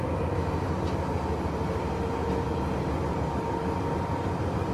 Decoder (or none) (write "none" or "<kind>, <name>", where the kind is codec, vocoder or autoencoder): none